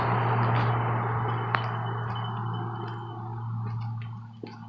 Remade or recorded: recorded